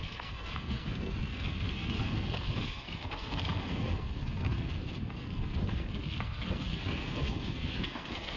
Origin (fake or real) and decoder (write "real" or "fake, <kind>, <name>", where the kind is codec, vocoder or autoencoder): fake, codec, SNAC